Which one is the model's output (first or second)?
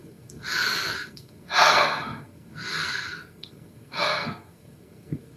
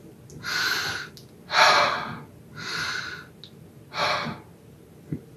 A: first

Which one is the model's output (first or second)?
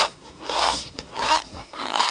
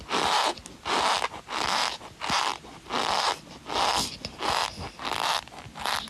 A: first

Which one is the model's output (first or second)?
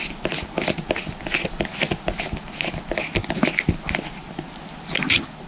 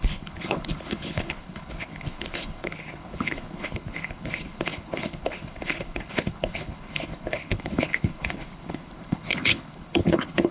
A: second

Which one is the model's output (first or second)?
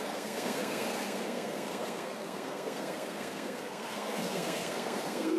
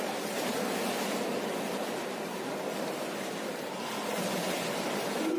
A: first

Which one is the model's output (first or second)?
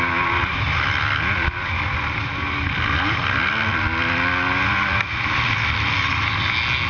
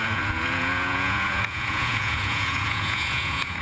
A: second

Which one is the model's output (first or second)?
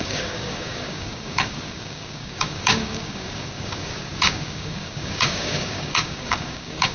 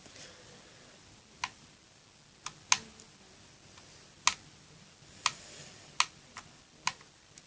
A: first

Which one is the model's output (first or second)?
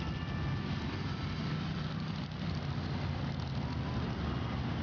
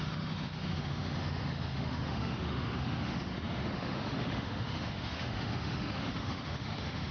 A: second